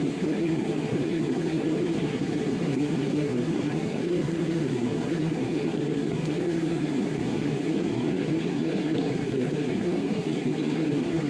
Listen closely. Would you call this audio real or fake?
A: fake